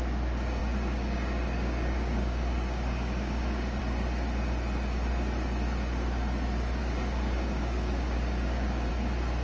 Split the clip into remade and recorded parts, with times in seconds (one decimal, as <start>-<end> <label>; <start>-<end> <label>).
0.0-0.6 recorded; 0.6-3.8 remade; 3.8-6.8 recorded; 6.8-8.9 remade; 8.9-9.4 recorded